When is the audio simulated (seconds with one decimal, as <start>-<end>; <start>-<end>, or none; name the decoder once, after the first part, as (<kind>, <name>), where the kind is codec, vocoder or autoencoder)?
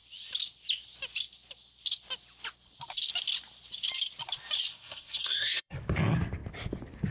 4.7-5.8 (codec, SNAC)